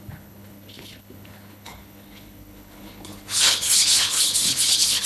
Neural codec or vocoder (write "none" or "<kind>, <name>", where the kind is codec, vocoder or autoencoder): codec, HILCodec